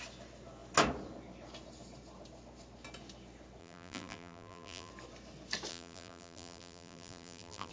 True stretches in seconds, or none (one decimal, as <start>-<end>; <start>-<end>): 0.0-3.6; 4.9-5.7